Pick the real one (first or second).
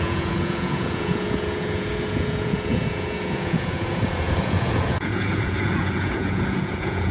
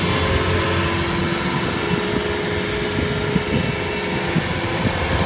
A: second